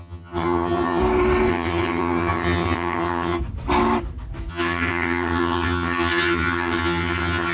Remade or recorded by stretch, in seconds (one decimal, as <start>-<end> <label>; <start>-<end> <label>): 0.0-1.0 remade; 1.0-1.5 recorded; 1.5-3.4 remade; 3.4-4.5 recorded; 4.5-7.5 remade